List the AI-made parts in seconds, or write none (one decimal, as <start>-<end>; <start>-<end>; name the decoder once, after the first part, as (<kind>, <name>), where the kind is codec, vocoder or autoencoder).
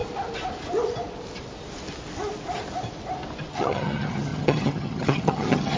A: 3.5-5.8 (vocoder, HiFi-GAN)